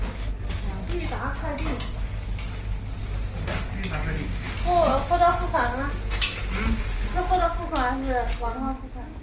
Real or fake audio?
real